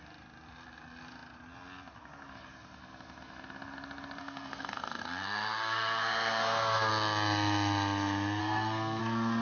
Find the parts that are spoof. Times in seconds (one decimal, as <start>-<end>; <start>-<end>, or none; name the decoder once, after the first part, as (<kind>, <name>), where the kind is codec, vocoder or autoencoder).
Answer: 4.2-6.9 (codec, SNAC); 8.4-9.0